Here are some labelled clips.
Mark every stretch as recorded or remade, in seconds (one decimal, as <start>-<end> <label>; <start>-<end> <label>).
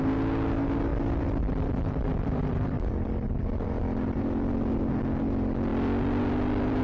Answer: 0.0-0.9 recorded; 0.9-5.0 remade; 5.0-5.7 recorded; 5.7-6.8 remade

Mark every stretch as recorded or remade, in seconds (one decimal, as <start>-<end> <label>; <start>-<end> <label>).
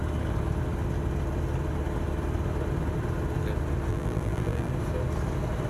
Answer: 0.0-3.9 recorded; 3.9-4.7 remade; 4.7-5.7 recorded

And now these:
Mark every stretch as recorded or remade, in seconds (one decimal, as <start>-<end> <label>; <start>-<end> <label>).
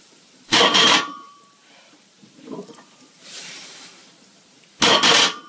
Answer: 0.0-4.0 remade; 4.0-5.5 recorded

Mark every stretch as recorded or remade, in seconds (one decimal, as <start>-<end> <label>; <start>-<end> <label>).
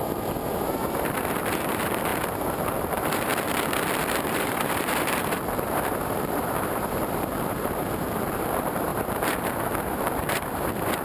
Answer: 0.0-3.3 remade; 3.3-4.3 recorded; 4.3-11.0 remade